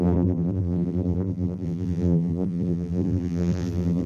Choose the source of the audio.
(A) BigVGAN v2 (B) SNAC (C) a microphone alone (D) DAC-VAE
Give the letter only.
A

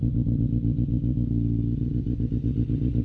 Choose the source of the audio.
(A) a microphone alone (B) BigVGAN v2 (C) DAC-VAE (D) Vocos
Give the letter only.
A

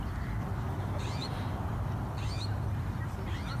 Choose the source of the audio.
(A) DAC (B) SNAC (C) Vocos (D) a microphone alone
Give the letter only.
D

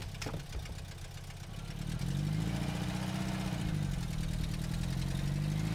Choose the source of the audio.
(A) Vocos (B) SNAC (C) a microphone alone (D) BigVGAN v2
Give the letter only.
C